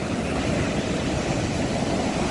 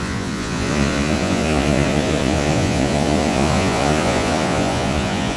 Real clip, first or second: first